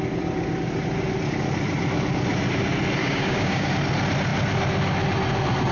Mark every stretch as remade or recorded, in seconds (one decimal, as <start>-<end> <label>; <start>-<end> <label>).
0.0-3.0 recorded; 3.0-3.7 remade; 3.7-5.7 recorded